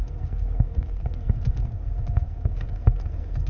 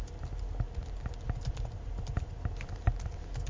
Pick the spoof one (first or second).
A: first